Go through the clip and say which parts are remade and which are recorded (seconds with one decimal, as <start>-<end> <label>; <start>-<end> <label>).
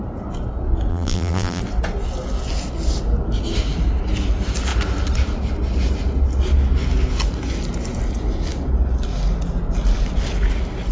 0.0-0.9 recorded; 0.9-1.6 remade; 1.6-10.9 recorded